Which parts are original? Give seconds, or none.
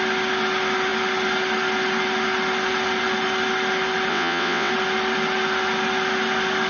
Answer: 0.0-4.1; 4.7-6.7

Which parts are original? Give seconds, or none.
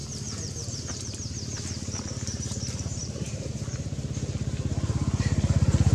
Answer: 3.5-5.9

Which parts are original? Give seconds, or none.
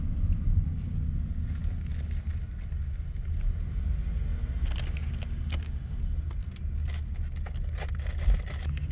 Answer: 0.0-8.9